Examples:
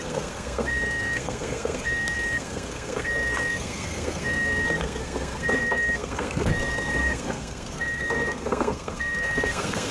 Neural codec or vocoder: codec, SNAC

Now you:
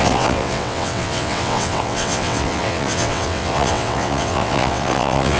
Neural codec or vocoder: vocoder, WaveNeXt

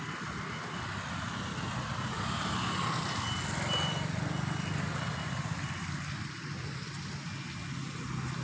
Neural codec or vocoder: none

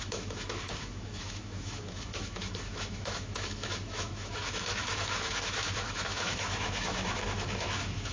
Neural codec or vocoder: autoencoder, DAC-VAE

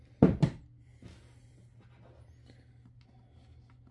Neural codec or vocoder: none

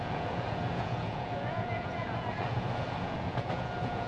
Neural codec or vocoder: vocoder, Vocos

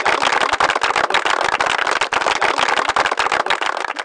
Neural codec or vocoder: none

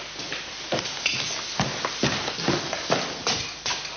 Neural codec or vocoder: none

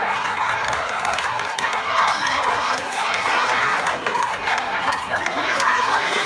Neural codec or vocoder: codec, SNAC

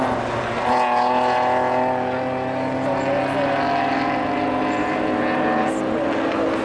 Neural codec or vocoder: none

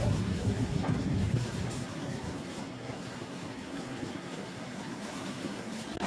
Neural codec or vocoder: codec, SNAC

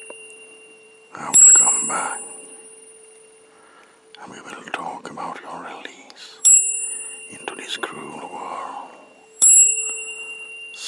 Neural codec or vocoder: vocoder, BigVGAN v2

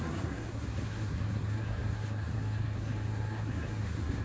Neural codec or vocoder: codec, SNAC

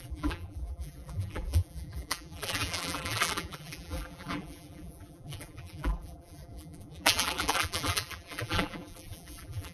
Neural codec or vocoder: vocoder, BigVGAN v2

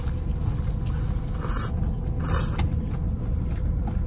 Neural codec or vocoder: none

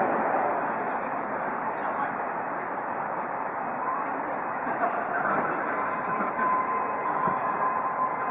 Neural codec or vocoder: vocoder, BigVGAN v2